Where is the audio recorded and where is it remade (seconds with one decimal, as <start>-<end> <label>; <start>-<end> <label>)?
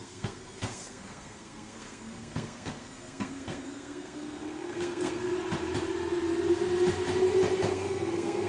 0.0-5.3 remade; 5.3-7.7 recorded; 7.7-8.5 remade